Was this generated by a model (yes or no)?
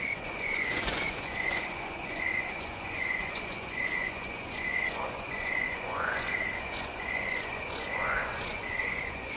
yes